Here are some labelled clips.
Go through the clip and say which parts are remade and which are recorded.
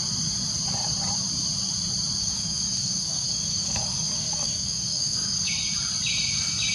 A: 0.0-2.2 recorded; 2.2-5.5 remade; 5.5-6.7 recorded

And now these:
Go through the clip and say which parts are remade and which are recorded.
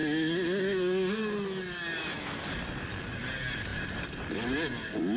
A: 0.0-5.2 recorded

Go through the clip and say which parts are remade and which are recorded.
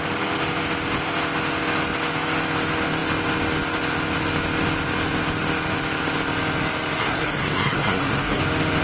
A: 0.0-7.0 recorded; 7.0-8.4 remade; 8.4-8.8 recorded